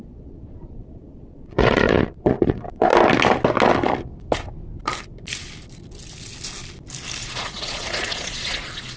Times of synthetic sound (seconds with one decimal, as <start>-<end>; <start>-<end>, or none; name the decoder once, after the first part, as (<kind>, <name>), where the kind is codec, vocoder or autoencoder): 0.0-2.9 (vocoder, Vocos); 7.2-9.0